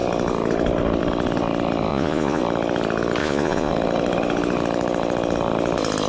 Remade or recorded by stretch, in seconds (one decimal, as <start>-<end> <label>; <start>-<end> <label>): 0.0-1.9 recorded; 1.9-2.4 remade; 2.4-3.2 recorded; 3.2-3.7 remade; 3.7-6.1 recorded